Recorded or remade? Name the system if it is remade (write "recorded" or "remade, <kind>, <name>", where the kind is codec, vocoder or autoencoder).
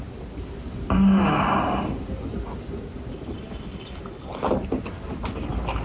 recorded